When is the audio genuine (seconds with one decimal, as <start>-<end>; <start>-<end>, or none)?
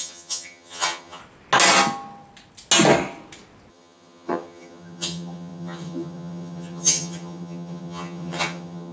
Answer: 1.2-3.7